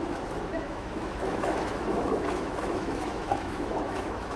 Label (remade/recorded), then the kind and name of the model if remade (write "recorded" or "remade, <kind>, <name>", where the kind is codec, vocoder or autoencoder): remade, autoencoder, DAC-VAE